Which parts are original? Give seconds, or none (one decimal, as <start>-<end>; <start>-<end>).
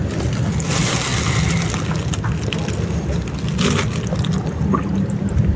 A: 0.0-5.6